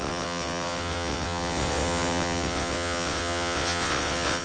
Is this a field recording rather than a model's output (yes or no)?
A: no